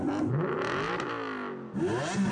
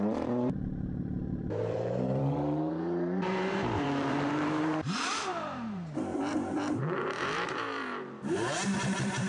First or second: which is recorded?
first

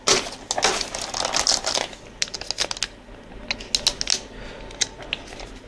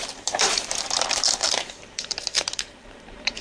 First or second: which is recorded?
first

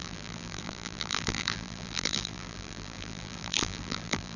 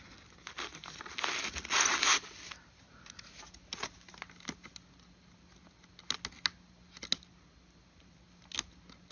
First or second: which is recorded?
second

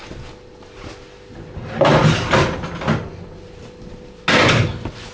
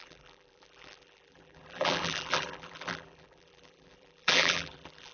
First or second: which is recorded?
first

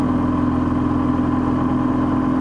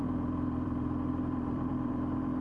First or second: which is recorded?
first